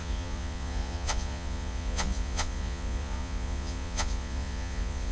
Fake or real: fake